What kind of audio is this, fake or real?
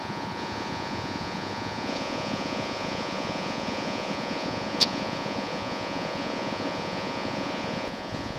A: fake